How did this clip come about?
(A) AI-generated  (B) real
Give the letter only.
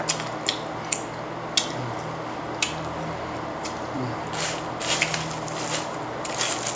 B